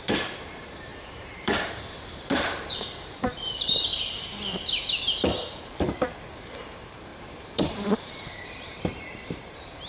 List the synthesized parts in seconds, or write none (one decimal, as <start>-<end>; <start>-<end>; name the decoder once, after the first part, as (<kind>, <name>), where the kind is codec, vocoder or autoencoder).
0.0-3.9 (vocoder, BigVGAN v2); 5.5-9.9